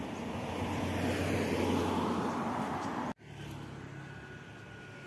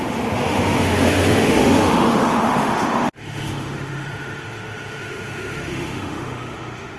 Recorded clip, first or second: first